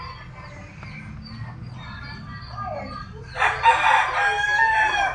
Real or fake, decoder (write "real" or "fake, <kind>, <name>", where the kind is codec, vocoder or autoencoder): real